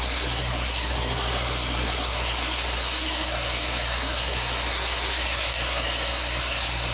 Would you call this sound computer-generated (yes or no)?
yes